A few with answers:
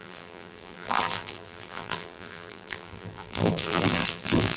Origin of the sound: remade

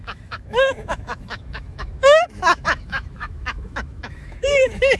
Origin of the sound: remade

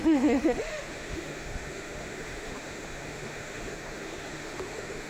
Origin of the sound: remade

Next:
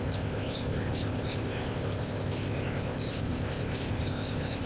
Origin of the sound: remade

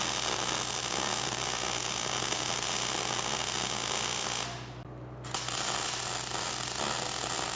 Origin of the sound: recorded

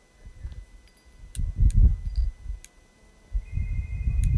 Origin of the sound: recorded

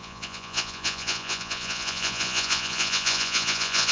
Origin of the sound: remade